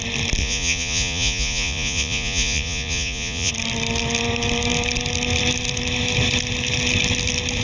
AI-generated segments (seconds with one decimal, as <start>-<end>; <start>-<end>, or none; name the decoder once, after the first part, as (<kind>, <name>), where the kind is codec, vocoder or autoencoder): 0.4-3.5 (vocoder, Vocos)